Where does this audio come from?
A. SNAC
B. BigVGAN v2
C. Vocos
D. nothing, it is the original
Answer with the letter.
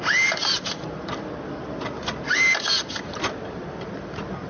D